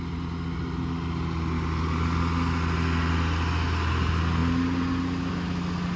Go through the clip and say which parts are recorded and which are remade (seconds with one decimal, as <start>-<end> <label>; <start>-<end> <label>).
0.0-6.0 recorded